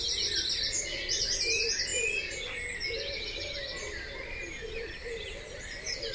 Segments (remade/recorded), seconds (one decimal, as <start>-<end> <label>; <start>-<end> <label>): 0.0-6.1 recorded